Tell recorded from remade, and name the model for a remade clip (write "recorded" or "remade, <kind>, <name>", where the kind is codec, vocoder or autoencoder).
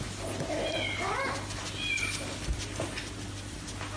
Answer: recorded